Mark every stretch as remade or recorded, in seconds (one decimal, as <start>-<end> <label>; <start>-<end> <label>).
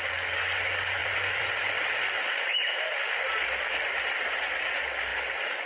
0.0-1.0 recorded; 1.0-4.4 remade; 4.4-5.1 recorded; 5.1-5.7 remade